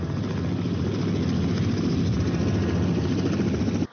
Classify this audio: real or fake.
real